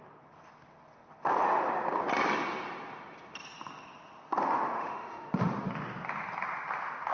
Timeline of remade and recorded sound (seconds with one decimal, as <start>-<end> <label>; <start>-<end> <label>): 0.0-4.7 recorded; 4.7-5.3 remade; 5.3-7.1 recorded